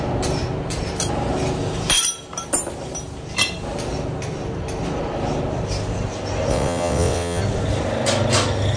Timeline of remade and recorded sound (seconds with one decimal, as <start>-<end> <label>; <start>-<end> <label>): 0.0-6.5 recorded; 6.5-7.4 remade; 7.4-8.8 recorded